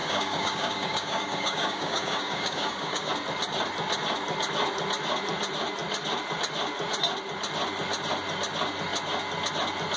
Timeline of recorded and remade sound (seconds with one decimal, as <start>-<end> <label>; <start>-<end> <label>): 0.0-3.1 remade; 3.1-10.0 recorded